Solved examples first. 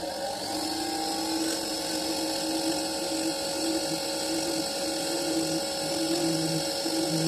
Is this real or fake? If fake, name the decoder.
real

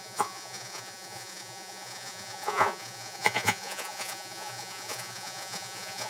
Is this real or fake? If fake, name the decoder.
fake, vocoder, Vocos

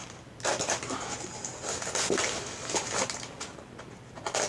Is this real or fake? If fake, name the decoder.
real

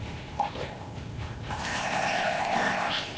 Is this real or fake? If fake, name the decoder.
fake, codec, ZipCodec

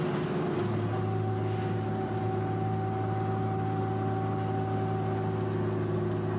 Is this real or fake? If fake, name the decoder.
real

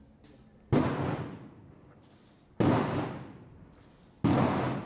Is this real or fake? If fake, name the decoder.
real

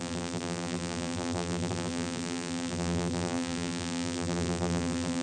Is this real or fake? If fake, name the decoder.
fake, vocoder, BigVGAN v2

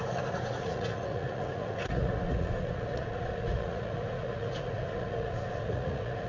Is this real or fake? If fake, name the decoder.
fake, vocoder, Vocos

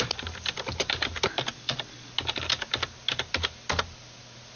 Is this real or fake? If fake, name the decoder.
real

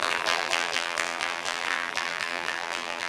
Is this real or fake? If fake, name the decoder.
fake, vocoder, BigVGAN v2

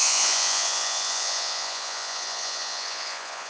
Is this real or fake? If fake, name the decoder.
fake, vocoder, Vocos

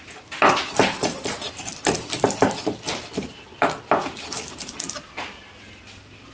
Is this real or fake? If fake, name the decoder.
real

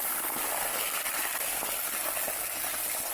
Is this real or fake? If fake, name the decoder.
real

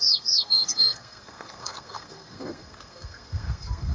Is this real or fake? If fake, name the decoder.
fake, codec, SNAC